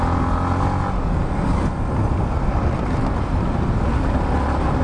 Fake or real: real